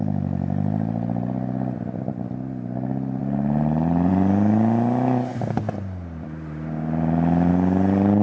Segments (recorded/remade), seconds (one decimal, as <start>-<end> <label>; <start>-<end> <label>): 0.0-8.2 recorded